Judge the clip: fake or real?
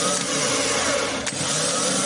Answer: real